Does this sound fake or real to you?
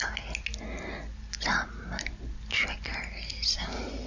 real